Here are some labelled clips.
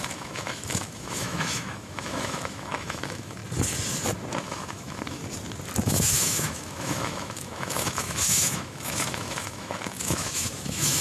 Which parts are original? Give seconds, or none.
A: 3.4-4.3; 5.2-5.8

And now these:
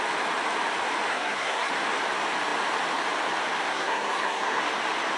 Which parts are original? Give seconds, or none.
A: 0.0-1.1; 1.7-3.7; 4.6-5.2